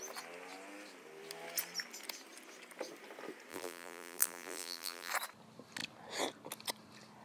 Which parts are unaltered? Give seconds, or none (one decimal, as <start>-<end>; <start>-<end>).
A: 0.0-3.5; 5.1-7.2